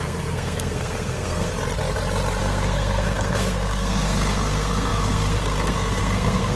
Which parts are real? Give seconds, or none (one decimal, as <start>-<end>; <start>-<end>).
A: 1.5-2.4